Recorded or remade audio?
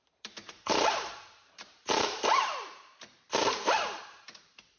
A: remade